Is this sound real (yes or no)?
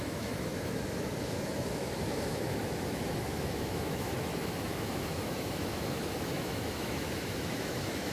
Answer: no